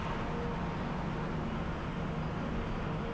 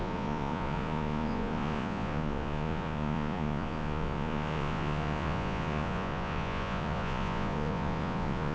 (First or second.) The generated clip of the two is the second